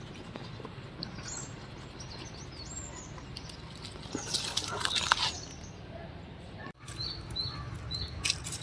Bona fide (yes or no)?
yes